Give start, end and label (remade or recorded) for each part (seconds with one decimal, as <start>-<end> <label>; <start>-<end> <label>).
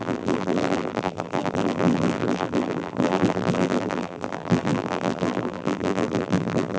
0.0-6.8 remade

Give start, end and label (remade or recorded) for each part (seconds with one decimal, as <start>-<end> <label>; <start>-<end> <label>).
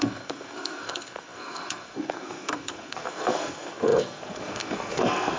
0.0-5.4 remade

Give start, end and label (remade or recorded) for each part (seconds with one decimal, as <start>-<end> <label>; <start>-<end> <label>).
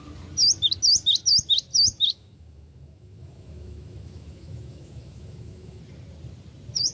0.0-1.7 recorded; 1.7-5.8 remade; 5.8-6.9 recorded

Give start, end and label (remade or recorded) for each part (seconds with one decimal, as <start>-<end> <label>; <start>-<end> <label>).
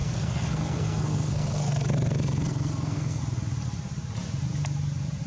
0.0-3.2 remade; 3.2-5.3 recorded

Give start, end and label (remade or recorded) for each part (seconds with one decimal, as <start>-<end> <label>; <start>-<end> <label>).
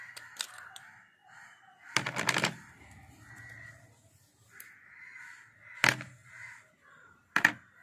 0.0-7.8 recorded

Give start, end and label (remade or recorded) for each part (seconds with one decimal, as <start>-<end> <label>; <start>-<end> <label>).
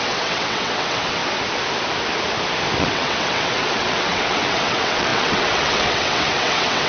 0.0-1.2 remade; 1.2-2.8 recorded; 2.8-6.9 remade